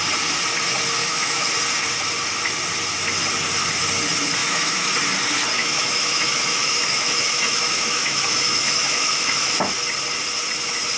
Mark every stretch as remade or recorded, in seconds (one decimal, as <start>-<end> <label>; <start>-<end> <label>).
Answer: 0.0-1.0 recorded; 1.0-1.5 remade; 1.5-4.4 recorded; 4.4-4.9 remade; 4.9-5.6 recorded; 5.6-9.5 remade; 9.5-11.0 recorded

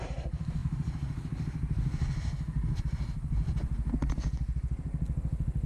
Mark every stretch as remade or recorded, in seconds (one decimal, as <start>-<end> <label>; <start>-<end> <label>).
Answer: 0.0-0.6 remade; 0.6-2.8 recorded; 2.8-3.4 remade; 3.4-5.7 recorded

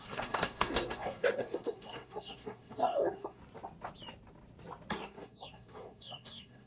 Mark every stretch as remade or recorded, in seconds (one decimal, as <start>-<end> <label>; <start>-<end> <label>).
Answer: 0.0-3.4 remade; 3.4-4.9 recorded; 4.9-6.7 remade

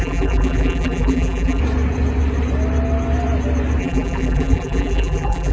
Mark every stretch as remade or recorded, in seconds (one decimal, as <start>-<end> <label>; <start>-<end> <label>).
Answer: 0.0-1.6 remade; 1.6-3.8 recorded; 3.8-5.5 remade

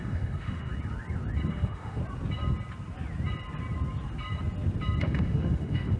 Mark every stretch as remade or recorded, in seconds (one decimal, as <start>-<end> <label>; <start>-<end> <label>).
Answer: 0.0-0.7 remade; 0.7-1.5 recorded; 1.5-2.0 remade; 2.0-5.0 recorded; 5.0-6.0 remade

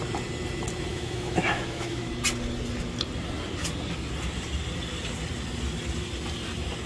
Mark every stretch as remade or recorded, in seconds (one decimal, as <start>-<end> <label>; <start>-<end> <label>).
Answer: 0.0-0.9 recorded; 0.9-2.1 remade; 2.1-6.9 recorded